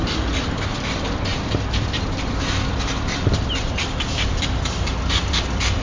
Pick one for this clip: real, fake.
fake